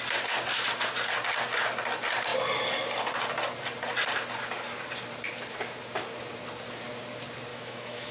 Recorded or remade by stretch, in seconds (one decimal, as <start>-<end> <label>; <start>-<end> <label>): 0.0-7.5 recorded; 7.5-8.1 remade